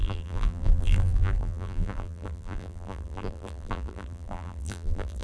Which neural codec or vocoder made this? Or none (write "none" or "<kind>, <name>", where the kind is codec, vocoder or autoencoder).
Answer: vocoder, BigVGAN v2